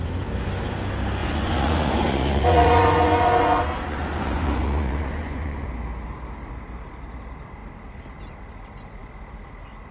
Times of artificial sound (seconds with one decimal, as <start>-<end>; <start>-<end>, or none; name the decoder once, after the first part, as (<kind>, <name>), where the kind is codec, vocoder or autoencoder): 1.2-5.7 (vocoder, Vocos)